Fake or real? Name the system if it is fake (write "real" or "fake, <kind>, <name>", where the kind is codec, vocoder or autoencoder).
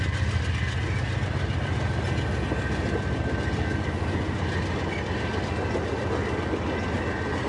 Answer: real